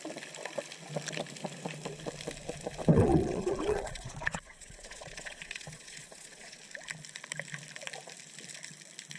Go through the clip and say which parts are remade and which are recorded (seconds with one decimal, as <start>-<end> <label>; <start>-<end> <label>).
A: 0.0-2.9 recorded; 2.9-6.6 remade; 6.6-9.2 recorded